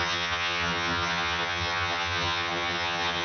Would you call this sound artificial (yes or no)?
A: yes